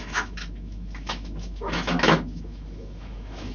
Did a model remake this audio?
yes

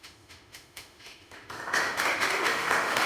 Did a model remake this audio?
yes